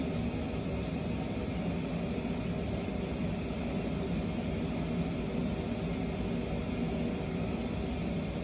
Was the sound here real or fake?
real